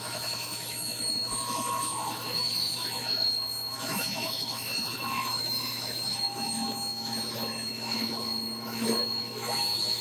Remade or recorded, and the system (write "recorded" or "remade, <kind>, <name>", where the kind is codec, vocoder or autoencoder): remade, autoencoder, DAC-VAE